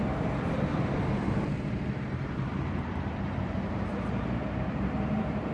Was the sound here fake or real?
fake